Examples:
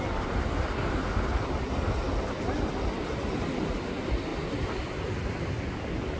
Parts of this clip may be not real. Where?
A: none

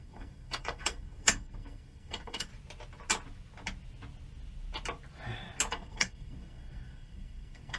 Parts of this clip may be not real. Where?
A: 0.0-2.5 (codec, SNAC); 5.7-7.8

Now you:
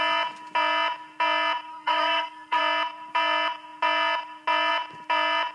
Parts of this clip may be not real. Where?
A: 1.7-2.6 (codec, SNAC)